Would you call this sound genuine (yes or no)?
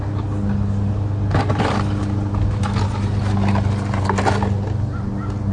yes